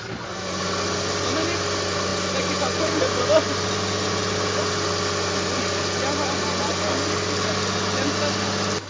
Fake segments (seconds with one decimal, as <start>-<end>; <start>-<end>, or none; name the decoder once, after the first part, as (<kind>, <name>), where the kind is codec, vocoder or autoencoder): none